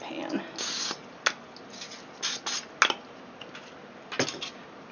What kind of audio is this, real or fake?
real